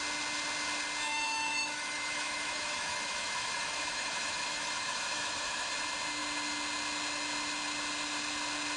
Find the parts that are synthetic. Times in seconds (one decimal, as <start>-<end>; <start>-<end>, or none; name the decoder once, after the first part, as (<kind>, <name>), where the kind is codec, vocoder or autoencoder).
1.1-5.7 (autoencoder, DAC-VAE)